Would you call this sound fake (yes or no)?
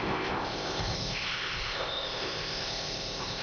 yes